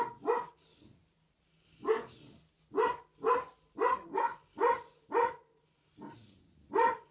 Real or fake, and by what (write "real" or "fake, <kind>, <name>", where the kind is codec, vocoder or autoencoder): real